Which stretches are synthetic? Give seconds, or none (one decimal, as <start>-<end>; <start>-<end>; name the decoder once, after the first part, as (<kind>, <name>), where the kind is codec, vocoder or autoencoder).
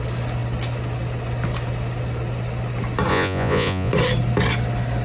3.1-3.9 (vocoder, Vocos)